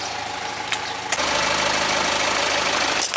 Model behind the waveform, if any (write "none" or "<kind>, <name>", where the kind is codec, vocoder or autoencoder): none